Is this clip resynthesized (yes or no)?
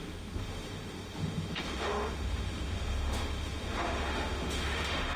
yes